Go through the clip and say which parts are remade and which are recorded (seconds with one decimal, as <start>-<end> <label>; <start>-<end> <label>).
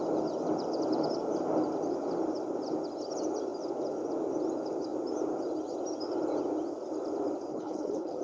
0.0-7.5 recorded; 7.5-8.2 remade